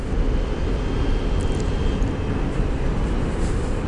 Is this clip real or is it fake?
real